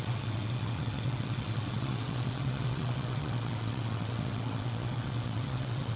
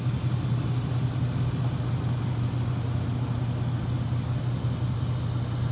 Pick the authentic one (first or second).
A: second